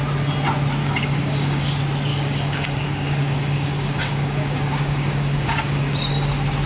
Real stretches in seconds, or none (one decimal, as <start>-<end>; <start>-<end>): 0.0-0.8; 1.7-2.1; 6.1-6.7